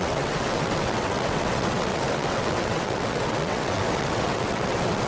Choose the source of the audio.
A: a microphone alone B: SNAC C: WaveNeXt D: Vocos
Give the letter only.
C